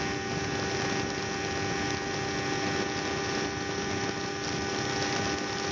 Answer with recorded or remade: recorded